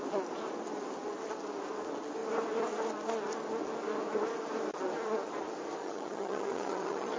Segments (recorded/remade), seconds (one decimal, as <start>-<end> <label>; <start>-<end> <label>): 0.0-5.8 recorded; 5.8-7.2 remade